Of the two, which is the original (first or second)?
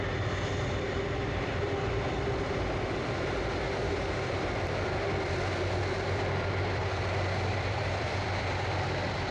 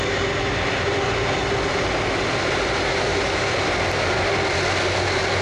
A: second